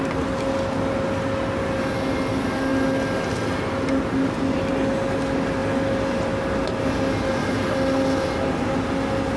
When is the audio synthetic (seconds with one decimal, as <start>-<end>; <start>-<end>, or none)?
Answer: none